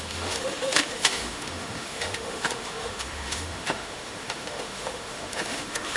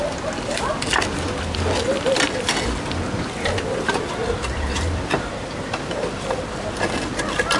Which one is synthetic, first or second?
first